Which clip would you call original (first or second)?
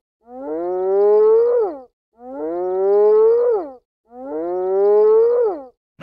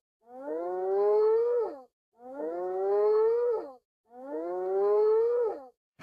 first